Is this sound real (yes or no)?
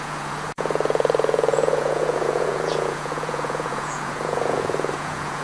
no